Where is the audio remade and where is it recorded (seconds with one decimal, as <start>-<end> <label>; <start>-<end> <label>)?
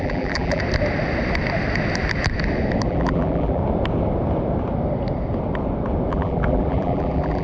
0.0-0.6 remade; 0.6-2.9 recorded; 2.9-3.6 remade; 3.6-6.1 recorded; 6.1-7.4 remade